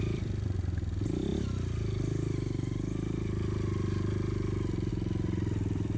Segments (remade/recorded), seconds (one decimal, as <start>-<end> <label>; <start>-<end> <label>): 0.0-1.3 remade; 1.3-4.9 recorded; 4.9-6.0 remade